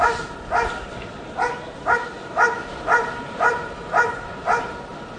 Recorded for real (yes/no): yes